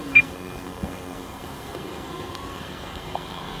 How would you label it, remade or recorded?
remade